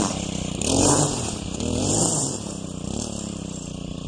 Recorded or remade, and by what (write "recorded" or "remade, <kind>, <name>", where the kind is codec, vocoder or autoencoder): remade, vocoder, BigVGAN v2